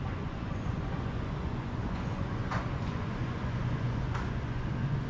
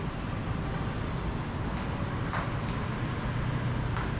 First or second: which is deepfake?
first